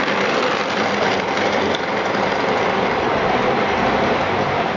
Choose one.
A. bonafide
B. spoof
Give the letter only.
A